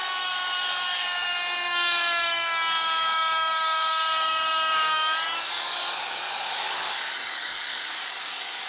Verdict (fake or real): fake